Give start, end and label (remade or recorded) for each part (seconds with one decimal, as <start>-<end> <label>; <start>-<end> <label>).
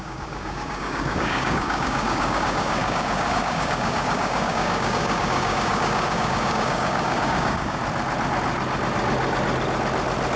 0.0-7.8 remade; 7.8-10.4 recorded